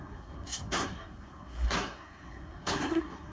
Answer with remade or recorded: remade